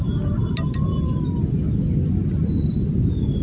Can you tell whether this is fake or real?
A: real